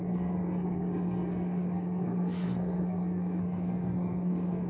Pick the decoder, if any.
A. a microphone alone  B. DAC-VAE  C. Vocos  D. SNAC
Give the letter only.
D